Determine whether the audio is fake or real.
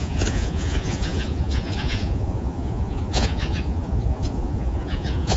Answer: fake